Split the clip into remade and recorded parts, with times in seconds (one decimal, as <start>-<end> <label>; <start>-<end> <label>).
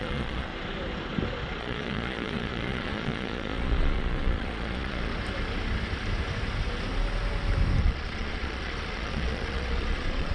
0.0-0.5 remade; 0.5-1.6 recorded; 1.6-5.1 remade; 5.1-7.8 recorded; 7.8-10.3 remade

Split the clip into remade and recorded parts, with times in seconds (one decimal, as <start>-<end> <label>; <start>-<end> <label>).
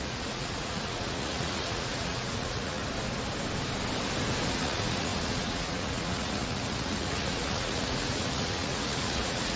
0.0-2.8 remade; 2.8-4.5 recorded; 4.5-9.6 remade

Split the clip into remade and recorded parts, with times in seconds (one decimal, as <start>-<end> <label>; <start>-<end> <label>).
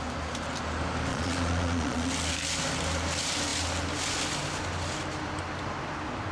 0.0-1.1 recorded; 1.1-2.1 remade; 2.1-6.3 recorded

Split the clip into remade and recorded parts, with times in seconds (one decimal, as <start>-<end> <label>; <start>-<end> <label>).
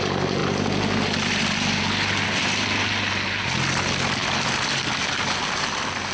0.0-6.1 recorded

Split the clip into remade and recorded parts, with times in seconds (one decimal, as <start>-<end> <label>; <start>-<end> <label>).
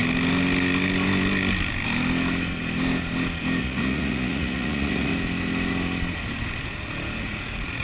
0.0-3.6 recorded; 3.6-5.1 remade; 5.1-7.2 recorded; 7.2-7.8 remade